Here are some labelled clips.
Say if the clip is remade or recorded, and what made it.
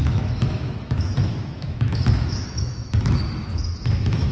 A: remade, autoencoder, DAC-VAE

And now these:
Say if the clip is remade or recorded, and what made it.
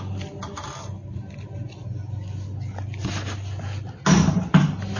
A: recorded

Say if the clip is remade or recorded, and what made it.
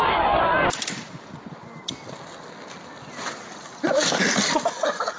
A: recorded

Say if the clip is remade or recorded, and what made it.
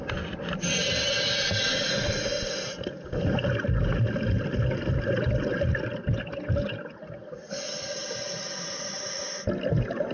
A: recorded